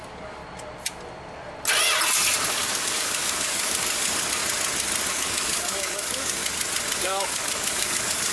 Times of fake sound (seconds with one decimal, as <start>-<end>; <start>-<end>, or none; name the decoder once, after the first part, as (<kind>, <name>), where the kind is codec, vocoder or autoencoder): 0.0-0.4 (codec, DAC); 2.5-4.4; 5.1-6.4; 7.0-8.3